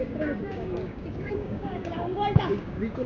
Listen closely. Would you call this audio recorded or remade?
remade